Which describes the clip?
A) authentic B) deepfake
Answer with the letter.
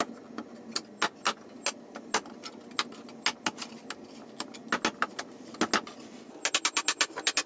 A